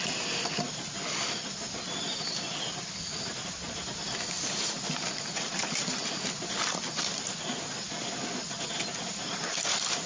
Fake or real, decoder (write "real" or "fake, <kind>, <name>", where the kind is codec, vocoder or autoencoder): real